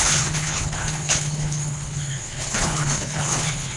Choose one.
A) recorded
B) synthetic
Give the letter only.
B